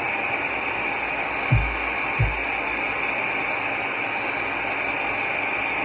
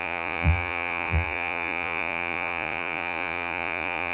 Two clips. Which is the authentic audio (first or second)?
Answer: first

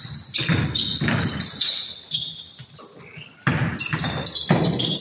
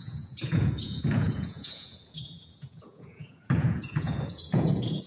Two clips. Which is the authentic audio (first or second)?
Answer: first